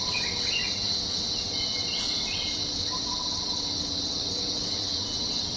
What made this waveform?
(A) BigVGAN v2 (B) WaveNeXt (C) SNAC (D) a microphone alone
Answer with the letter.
B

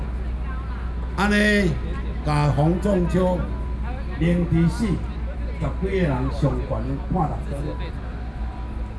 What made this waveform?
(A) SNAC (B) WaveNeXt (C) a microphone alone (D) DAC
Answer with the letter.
C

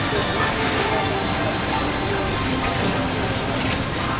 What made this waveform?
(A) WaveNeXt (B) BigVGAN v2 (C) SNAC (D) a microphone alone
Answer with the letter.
D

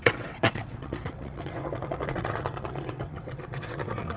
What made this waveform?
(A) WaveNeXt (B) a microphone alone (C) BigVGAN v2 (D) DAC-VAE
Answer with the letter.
A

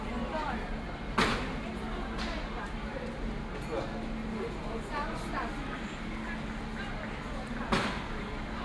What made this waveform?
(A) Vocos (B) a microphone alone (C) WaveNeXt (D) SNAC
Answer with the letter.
B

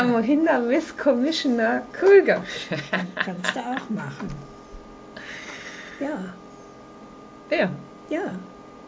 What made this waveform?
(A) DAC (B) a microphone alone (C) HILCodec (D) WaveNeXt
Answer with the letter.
B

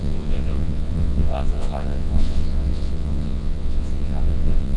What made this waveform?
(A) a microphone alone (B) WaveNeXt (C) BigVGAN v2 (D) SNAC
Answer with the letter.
B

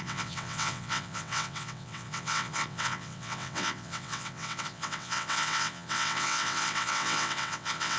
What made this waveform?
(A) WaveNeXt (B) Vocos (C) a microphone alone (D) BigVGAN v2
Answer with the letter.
A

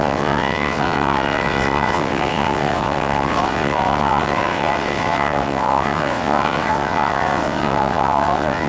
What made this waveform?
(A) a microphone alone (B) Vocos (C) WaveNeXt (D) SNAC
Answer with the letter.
C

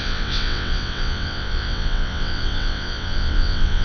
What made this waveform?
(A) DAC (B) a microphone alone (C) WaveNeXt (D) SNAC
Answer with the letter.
C